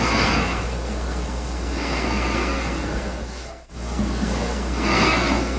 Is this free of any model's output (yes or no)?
no